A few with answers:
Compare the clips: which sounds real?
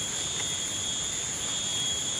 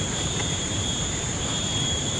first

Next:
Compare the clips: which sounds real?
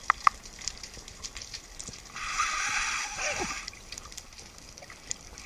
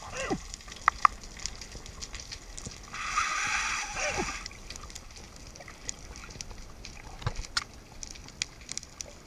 second